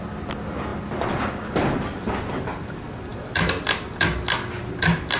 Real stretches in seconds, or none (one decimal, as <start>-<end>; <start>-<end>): 0.0-5.2